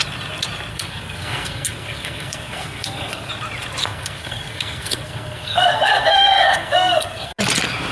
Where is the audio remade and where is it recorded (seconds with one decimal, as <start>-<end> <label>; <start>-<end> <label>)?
0.0-0.7 recorded; 0.7-3.3 remade; 3.3-3.8 recorded; 3.8-7.4 remade; 7.4-7.9 recorded